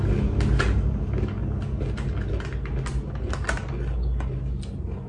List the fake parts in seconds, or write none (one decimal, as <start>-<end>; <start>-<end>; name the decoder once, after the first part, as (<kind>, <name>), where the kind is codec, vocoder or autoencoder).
none